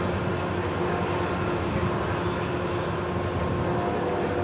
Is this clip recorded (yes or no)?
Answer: yes